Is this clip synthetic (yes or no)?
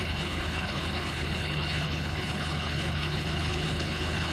yes